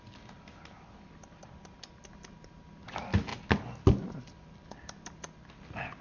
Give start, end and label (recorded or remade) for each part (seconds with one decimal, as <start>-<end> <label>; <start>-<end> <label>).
0.0-6.0 recorded